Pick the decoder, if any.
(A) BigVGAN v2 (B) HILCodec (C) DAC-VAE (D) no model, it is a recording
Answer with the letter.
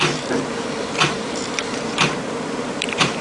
A